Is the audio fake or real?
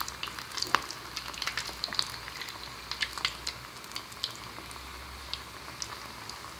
real